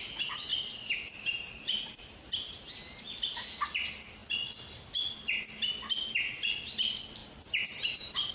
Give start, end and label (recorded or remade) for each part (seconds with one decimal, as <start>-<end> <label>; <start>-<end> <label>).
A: 0.0-0.5 recorded; 0.5-2.6 remade; 2.6-7.2 recorded; 7.2-8.3 remade

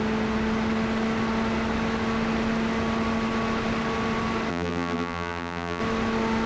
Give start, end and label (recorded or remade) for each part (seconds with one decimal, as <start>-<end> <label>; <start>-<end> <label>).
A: 0.0-4.5 recorded; 4.5-5.8 remade; 5.8-6.5 recorded

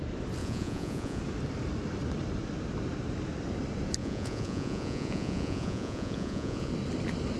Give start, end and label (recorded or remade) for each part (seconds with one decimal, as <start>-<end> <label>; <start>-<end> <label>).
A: 0.0-0.4 recorded; 0.4-1.2 remade; 1.2-4.0 recorded; 4.0-6.7 remade; 6.7-7.4 recorded

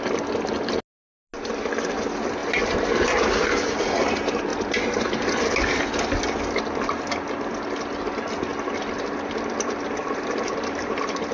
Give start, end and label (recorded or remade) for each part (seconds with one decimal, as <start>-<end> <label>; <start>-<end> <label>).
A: 0.0-10.0 recorded; 10.0-11.3 remade

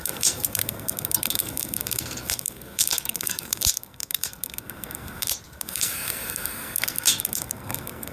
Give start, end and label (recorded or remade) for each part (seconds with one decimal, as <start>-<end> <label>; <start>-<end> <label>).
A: 0.0-8.1 remade

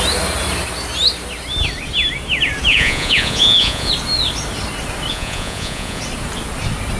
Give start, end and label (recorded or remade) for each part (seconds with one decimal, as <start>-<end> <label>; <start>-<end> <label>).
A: 0.0-2.7 recorded; 2.7-3.9 remade; 3.9-5.1 recorded; 5.1-6.0 remade; 6.0-7.0 recorded